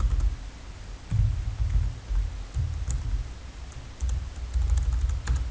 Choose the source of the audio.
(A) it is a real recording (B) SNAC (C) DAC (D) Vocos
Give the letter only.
A